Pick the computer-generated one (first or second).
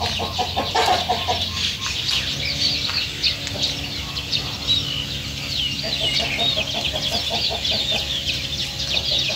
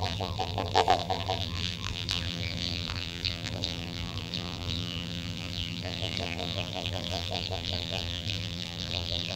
second